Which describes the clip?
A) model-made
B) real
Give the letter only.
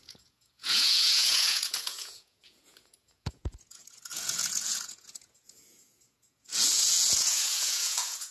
A